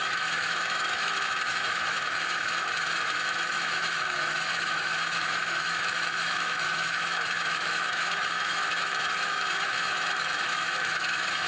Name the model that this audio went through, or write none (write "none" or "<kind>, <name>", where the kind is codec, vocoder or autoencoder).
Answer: autoencoder, DAC-VAE